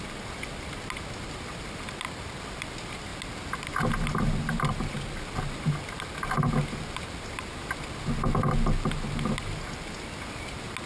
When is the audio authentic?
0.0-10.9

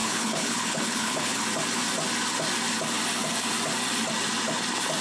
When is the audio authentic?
1.4-5.0

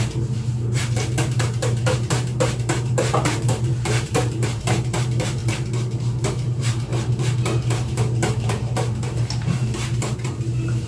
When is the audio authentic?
5.4-6.3

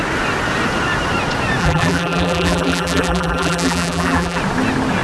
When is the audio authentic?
0.0-1.6; 4.4-5.0

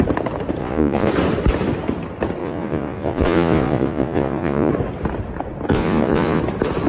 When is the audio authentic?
0.0-0.6; 1.1-2.4; 4.7-5.7; 6.4-6.9